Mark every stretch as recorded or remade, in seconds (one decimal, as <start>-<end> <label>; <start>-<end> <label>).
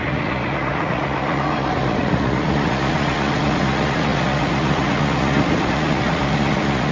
0.0-6.9 remade